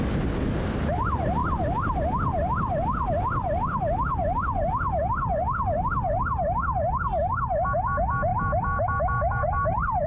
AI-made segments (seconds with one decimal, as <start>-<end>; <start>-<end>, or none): 8.3-8.9